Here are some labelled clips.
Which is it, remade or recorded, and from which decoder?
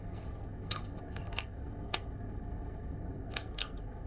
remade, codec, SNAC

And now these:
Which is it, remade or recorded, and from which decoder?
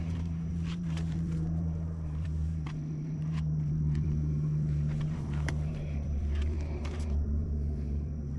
remade, vocoder, BigVGAN v2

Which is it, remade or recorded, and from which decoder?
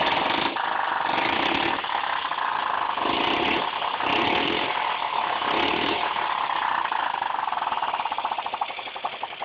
recorded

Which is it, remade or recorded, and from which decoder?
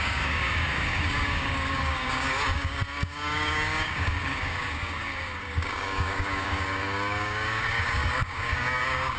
remade, codec, DAC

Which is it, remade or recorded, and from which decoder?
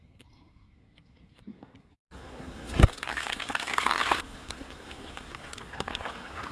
remade, codec, SNAC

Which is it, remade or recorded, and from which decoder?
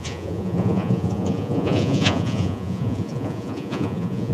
remade, vocoder, Vocos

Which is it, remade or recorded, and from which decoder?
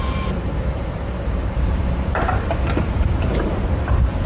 remade, vocoder, BigVGAN v2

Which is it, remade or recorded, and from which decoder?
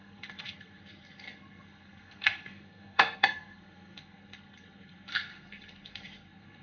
remade, codec, SNAC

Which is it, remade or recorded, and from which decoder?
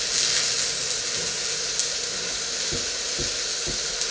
recorded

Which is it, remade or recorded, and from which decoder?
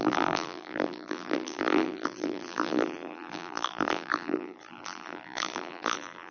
remade, vocoder, BigVGAN v2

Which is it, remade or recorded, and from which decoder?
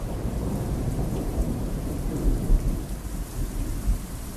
remade, vocoder, BigVGAN v2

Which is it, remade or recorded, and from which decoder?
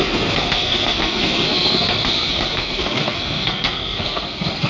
remade, codec, SNAC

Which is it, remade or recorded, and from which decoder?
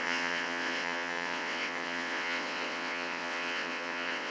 remade, vocoder, WaveNeXt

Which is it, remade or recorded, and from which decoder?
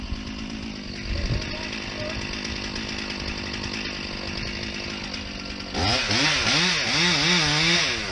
recorded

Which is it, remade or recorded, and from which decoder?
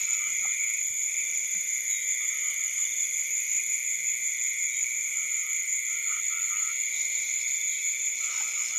recorded